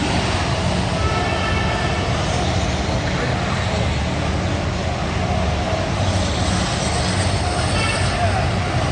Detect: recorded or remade recorded